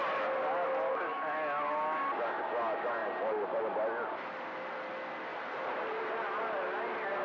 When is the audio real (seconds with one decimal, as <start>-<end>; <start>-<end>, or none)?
0.0-3.0; 3.6-5.3; 6.3-7.2